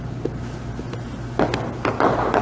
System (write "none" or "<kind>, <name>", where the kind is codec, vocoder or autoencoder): none